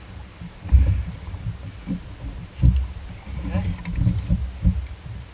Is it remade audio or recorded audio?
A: recorded